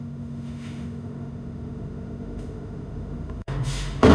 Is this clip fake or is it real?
fake